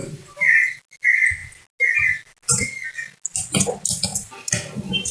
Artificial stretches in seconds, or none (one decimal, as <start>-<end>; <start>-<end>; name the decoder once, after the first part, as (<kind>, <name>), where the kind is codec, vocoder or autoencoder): 0.0-0.8 (vocoder, BigVGAN v2); 4.2-5.1